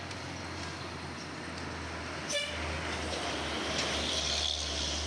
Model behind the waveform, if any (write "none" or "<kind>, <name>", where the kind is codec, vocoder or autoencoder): none